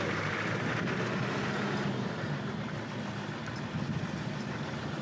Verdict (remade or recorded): remade